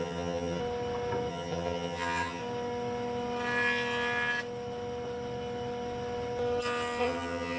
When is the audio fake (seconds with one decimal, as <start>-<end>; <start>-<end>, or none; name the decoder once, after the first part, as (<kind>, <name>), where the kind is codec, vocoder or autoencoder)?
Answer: 0.0-0.6 (vocoder, HiFi-GAN); 1.3-2.4; 7.0-7.6